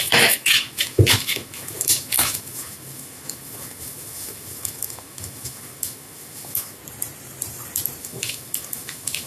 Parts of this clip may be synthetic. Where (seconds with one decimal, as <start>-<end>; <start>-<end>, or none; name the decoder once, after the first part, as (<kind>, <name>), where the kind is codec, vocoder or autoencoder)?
0.0-6.8 (autoencoder, DAC-VAE); 8.0-9.3